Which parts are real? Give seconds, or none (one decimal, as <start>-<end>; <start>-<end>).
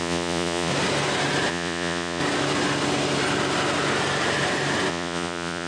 0.7-1.5; 2.2-4.9